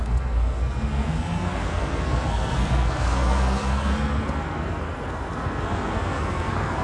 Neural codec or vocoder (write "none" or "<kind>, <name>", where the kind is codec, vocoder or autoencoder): codec, SNAC